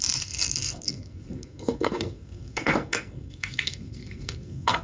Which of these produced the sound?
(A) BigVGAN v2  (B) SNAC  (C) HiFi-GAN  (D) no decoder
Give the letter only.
B